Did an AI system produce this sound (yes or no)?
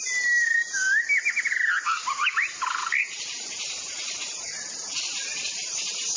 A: no